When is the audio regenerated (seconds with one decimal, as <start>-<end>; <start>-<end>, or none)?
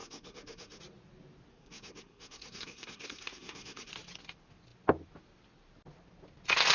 0.0-0.8; 1.5-3.9